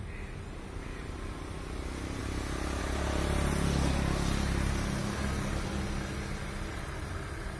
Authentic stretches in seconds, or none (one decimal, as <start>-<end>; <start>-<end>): 0.0-7.6